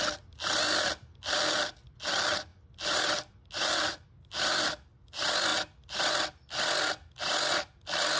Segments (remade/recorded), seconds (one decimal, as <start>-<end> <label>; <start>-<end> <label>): 0.0-8.2 recorded